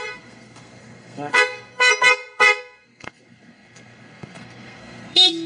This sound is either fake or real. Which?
fake